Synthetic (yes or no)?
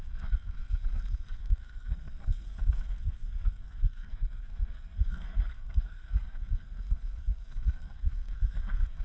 yes